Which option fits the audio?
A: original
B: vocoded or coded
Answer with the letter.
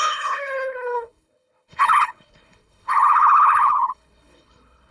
B